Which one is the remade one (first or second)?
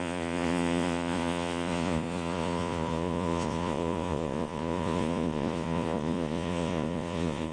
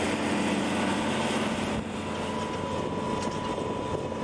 first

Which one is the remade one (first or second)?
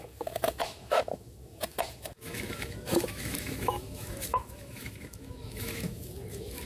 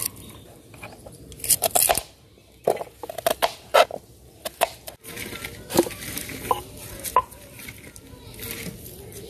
first